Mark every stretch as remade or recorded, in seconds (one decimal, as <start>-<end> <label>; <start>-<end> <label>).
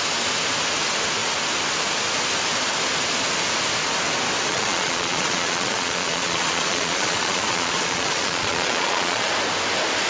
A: 0.0-4.5 recorded; 4.5-9.3 remade; 9.3-10.1 recorded